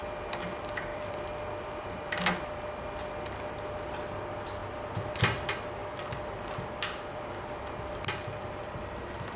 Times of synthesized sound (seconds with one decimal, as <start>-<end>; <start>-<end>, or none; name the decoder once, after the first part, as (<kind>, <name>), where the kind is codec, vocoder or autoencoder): 0.9-2.1 (vocoder, BigVGAN v2)